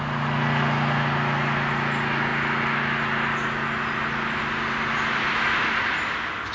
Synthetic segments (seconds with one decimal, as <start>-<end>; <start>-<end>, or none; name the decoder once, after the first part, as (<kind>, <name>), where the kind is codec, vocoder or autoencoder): none